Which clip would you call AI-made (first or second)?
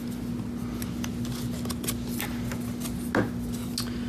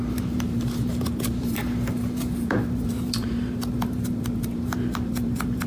second